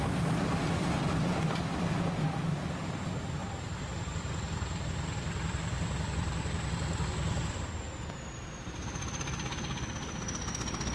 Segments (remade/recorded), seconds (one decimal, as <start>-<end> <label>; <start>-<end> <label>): 0.0-3.4 recorded; 3.4-3.9 remade; 3.9-10.9 recorded